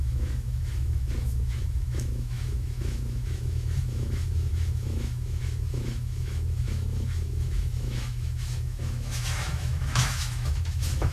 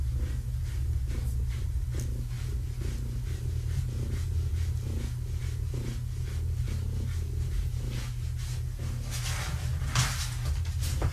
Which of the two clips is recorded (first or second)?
second